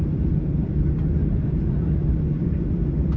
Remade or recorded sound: remade